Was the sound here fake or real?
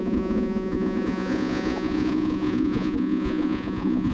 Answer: fake